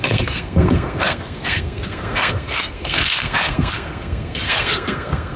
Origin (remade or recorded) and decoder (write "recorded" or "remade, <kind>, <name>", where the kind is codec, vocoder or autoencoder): remade, codec, SNAC